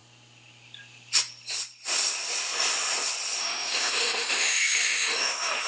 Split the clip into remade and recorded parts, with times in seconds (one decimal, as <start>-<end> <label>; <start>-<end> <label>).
0.0-3.4 recorded; 3.4-5.7 remade